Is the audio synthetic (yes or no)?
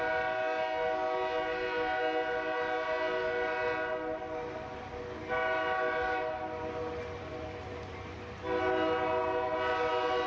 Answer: no